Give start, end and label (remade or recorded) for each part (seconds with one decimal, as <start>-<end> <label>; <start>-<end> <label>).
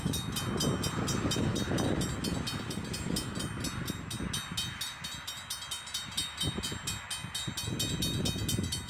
0.0-8.9 recorded